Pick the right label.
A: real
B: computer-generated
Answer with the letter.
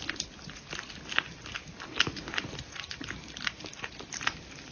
A